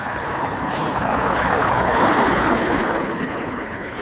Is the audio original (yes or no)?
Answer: no